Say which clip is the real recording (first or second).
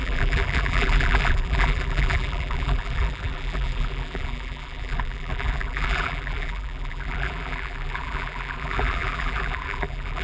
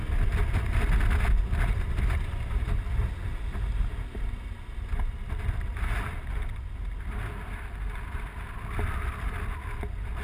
second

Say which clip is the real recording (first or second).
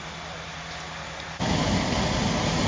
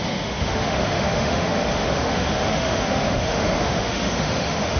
first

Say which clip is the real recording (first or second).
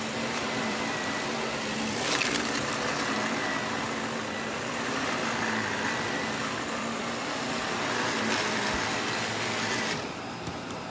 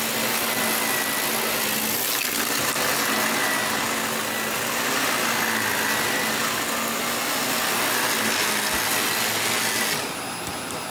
second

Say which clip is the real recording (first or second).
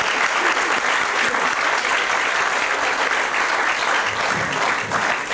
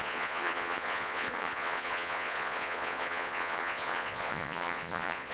first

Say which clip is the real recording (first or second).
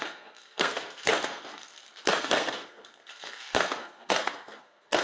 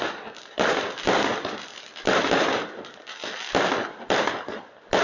second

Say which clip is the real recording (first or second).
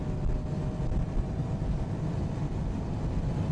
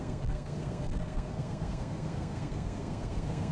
first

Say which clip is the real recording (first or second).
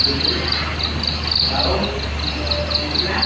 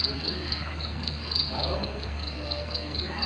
first